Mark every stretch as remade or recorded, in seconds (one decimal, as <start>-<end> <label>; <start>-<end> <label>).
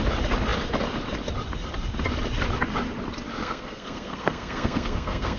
0.0-3.4 recorded; 3.4-5.4 remade